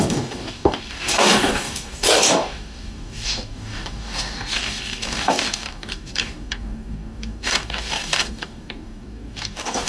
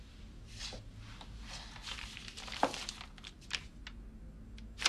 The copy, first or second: first